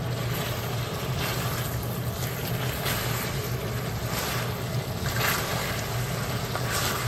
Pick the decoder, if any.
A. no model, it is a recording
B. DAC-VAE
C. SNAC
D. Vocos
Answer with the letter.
A